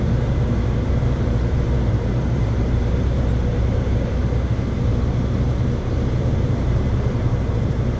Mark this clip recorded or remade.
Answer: remade